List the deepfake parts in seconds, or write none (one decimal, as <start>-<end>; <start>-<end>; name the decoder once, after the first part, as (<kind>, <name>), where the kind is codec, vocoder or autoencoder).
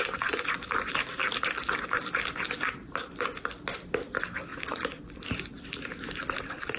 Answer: 4.5-5.0 (vocoder, Vocos)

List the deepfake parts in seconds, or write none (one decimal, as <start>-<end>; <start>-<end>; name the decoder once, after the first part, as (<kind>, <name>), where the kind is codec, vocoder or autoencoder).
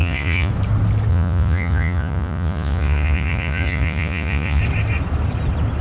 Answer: 0.0-0.5 (vocoder, Vocos); 1.1-4.6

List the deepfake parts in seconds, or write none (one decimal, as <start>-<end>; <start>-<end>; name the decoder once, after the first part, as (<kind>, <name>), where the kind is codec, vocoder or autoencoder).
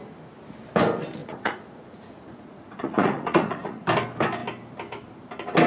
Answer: 1.2-3.8 (vocoder, Vocos)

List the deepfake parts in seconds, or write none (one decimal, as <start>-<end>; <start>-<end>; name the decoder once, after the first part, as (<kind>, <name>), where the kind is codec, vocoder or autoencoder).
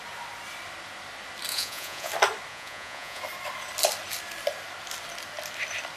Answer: 1.5-2.1 (vocoder, Vocos); 2.5-3.2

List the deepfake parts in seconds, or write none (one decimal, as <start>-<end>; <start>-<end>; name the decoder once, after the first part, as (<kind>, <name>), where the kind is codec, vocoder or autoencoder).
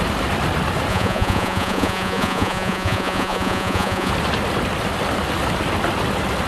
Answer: 0.9-4.1 (vocoder, Vocos)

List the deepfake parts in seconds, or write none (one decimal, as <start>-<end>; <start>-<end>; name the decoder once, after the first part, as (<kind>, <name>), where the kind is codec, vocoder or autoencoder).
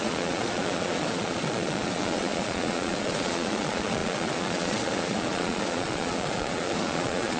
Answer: 0.0-7.4 (vocoder, Vocos)